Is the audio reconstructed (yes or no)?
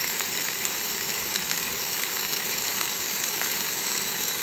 yes